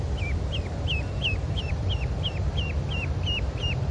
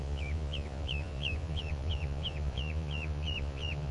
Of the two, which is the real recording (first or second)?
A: first